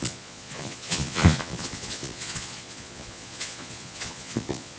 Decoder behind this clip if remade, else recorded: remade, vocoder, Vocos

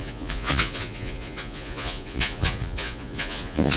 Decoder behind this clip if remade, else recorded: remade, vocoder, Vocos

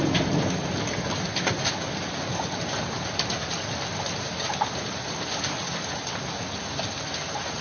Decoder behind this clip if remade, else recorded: recorded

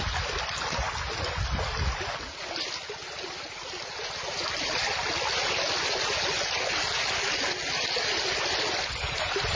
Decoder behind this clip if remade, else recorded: recorded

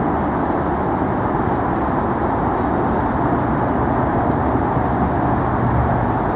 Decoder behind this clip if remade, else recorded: recorded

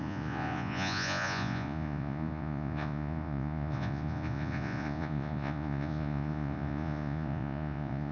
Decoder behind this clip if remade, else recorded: remade, vocoder, Vocos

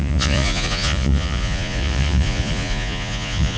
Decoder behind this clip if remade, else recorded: remade, vocoder, Vocos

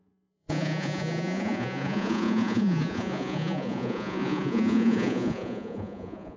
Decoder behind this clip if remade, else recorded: remade, vocoder, Vocos